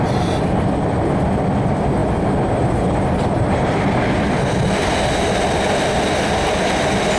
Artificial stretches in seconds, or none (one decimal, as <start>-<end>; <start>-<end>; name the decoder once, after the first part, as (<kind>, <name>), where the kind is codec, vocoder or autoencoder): none